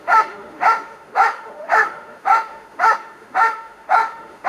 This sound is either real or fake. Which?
fake